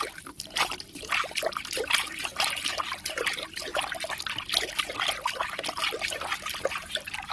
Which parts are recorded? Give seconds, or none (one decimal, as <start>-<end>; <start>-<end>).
3.7-5.3